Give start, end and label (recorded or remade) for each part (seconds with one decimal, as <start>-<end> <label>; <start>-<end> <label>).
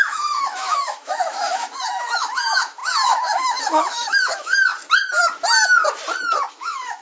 0.0-4.7 remade; 4.7-6.5 recorded; 6.5-7.0 remade